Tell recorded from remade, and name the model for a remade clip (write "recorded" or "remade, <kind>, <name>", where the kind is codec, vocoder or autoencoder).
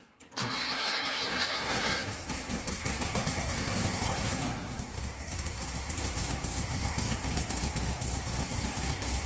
remade, codec, SNAC